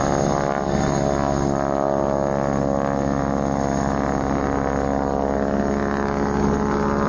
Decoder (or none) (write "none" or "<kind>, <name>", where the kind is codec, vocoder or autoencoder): none